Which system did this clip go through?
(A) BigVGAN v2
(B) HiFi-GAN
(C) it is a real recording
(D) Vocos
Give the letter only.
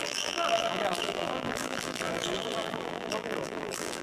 A